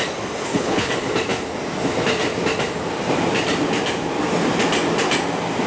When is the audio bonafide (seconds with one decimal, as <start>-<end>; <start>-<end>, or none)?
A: 0.0-0.4; 0.9-5.7